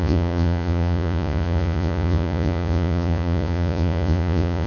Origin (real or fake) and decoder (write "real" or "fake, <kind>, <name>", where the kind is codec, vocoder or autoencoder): fake, vocoder, Vocos